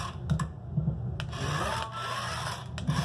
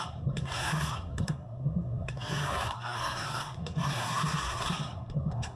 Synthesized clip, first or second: second